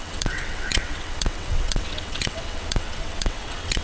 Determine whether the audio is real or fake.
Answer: fake